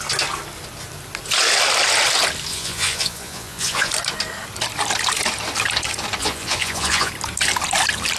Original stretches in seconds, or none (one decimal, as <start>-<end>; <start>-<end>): 0.0-2.5; 3.9-6.2; 7.1-8.2